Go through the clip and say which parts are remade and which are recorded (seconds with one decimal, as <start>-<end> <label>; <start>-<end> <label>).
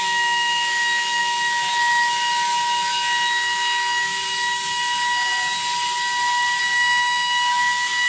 0.0-5.3 remade; 5.3-6.6 recorded; 6.6-8.1 remade